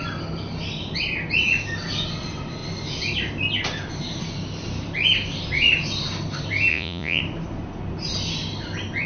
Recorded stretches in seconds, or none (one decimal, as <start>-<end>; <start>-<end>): 0.0-6.7; 7.2-9.1